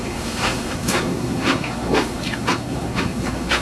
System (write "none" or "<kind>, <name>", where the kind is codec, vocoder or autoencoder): codec, SNAC